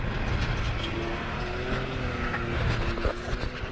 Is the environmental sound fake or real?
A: real